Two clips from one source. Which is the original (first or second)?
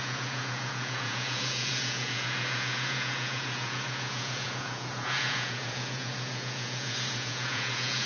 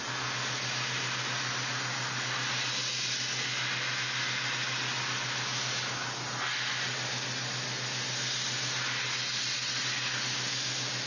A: second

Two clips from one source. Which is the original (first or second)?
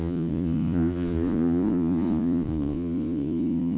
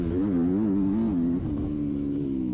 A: second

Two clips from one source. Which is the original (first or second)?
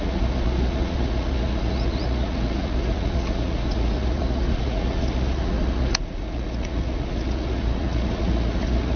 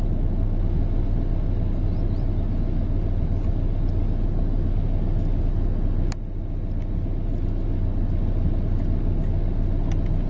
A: second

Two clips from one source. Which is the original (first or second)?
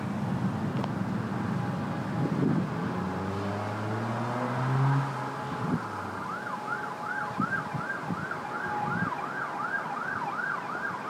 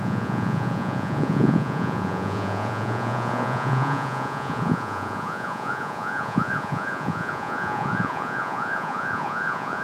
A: first